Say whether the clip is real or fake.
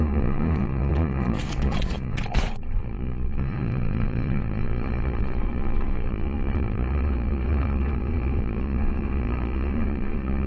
fake